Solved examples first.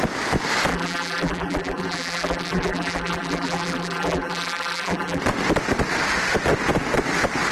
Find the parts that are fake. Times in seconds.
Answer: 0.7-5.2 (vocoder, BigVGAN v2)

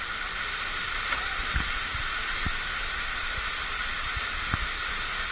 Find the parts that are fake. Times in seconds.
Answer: none

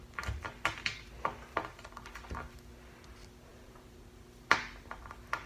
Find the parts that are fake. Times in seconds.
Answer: 3.5-5.0 (vocoder, BigVGAN v2)